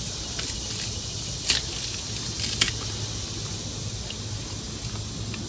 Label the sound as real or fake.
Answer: real